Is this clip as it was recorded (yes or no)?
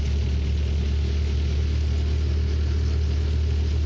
yes